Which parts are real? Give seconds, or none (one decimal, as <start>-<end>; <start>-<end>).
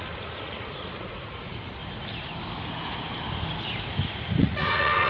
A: 1.8-4.4